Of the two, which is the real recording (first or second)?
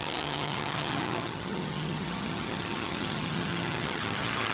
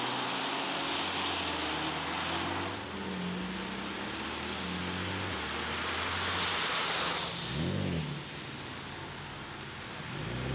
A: second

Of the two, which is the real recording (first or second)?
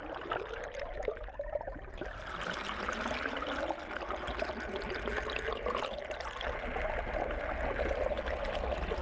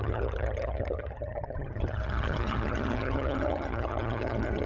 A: first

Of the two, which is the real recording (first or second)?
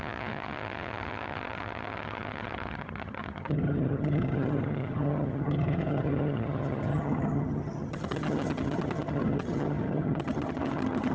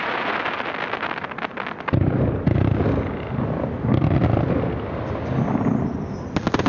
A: second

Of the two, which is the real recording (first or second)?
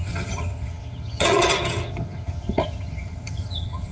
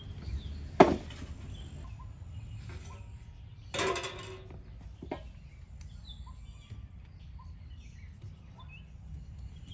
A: second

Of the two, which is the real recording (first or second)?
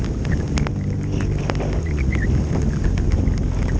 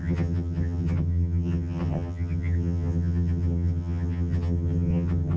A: first